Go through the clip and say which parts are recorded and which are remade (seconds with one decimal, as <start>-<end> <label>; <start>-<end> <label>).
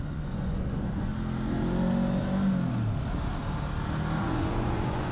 0.0-1.1 remade; 1.1-4.2 recorded; 4.2-5.1 remade